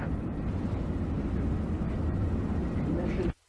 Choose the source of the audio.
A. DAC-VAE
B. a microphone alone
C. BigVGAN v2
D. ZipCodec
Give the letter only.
B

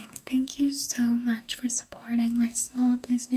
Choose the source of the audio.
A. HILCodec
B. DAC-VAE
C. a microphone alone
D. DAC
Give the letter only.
D